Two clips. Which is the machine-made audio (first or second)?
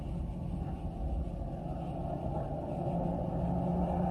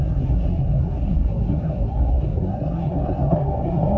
second